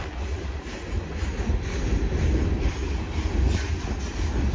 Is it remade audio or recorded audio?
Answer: recorded